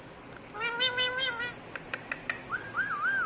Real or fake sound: real